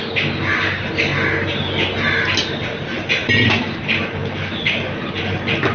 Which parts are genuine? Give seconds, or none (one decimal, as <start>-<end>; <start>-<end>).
0.0-5.7

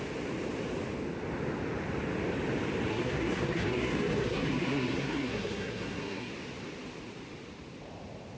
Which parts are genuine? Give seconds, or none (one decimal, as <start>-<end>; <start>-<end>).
0.0-2.9; 6.3-8.4

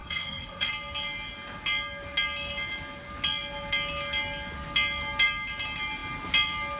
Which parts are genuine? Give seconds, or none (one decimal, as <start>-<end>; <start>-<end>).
0.7-6.8